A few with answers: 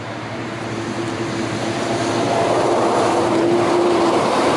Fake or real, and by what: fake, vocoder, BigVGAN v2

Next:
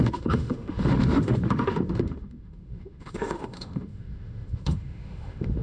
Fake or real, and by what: fake, autoencoder, DAC-VAE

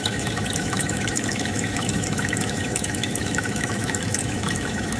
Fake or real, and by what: fake, autoencoder, DAC-VAE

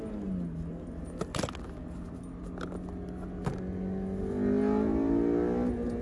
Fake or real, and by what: real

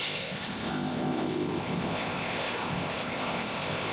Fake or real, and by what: fake, codec, ZipCodec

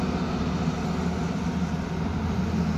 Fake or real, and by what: real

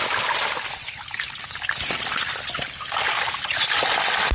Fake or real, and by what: real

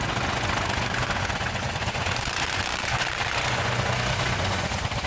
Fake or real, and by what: fake, vocoder, Vocos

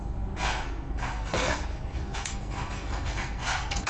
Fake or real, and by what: fake, codec, SNAC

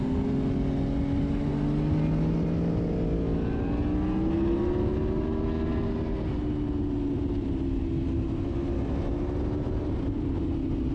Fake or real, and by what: real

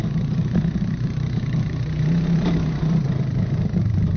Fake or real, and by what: fake, vocoder, BigVGAN v2